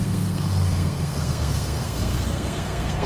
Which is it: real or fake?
fake